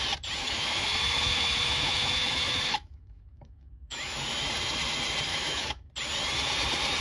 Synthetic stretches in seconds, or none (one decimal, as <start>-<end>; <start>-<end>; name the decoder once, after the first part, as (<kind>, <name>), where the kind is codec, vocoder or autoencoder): 0.4-4.2 (autoencoder, DAC-VAE); 5.3-5.9